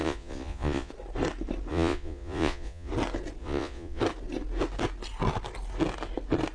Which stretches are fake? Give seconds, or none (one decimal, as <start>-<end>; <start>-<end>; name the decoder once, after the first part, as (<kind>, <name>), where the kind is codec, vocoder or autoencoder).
0.0-0.9 (vocoder, Vocos); 1.7-2.9; 3.4-4.0